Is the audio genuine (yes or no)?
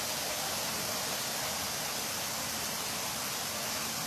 yes